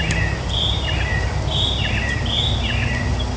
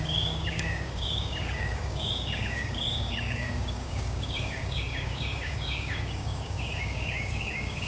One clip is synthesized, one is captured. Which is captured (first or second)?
first